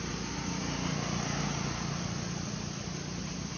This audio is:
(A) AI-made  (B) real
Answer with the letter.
B